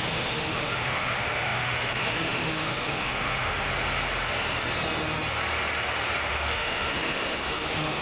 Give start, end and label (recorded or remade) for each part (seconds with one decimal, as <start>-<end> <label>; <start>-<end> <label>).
0.0-3.7 remade; 3.7-6.3 recorded; 6.3-8.0 remade